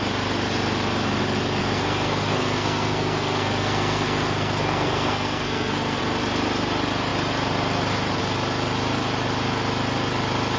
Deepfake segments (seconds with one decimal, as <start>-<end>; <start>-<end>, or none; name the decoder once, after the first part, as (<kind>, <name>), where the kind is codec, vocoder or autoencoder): 1.6-6.0 (codec, SNAC)